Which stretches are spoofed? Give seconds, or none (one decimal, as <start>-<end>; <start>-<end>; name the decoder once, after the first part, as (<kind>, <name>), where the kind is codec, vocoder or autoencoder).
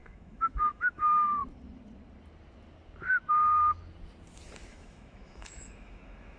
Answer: 0.0-1.4 (autoencoder, DAC-VAE); 4.7-6.4